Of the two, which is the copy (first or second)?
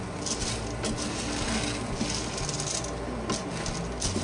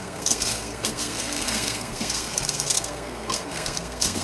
second